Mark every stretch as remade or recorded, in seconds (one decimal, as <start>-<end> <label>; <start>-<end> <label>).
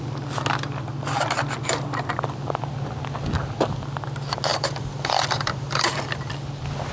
0.0-4.5 recorded; 4.5-6.3 remade; 6.3-6.9 recorded